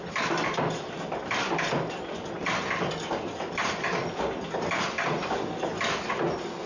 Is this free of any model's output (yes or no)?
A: yes